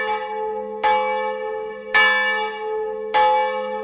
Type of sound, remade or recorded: recorded